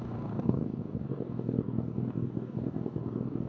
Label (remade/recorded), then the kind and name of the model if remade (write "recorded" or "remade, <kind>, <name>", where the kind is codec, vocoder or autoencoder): remade, codec, DAC